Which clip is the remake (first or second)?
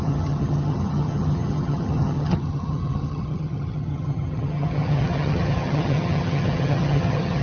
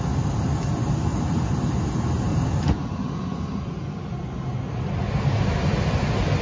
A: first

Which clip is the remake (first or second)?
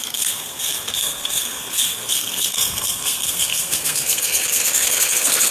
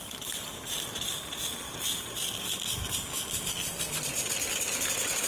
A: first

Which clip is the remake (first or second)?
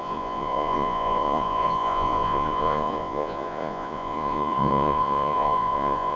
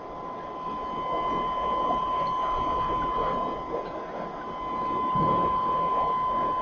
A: first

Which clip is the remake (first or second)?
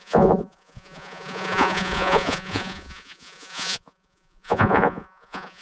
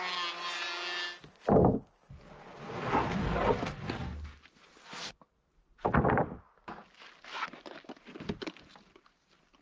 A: first